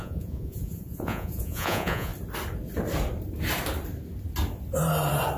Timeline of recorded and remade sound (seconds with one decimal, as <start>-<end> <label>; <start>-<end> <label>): 0.0-2.1 remade; 2.1-5.4 recorded